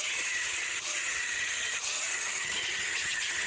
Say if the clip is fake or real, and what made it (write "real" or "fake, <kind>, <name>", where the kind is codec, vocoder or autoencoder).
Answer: fake, vocoder, HiFi-GAN